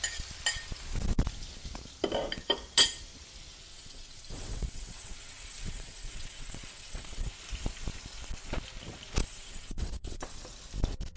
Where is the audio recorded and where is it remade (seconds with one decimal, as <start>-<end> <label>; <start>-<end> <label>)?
0.0-3.7 recorded; 3.7-7.3 remade; 7.3-9.2 recorded; 9.2-10.4 remade; 10.4-11.2 recorded